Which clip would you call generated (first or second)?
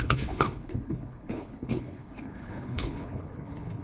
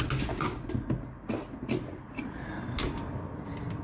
first